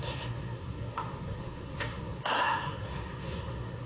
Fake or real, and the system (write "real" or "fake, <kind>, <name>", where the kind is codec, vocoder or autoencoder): fake, codec, SNAC